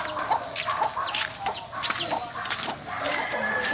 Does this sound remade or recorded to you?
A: recorded